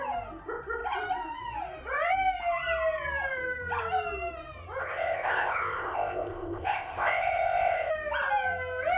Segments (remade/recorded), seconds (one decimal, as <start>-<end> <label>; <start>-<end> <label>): 0.0-4.8 recorded; 4.8-7.9 remade; 7.9-9.0 recorded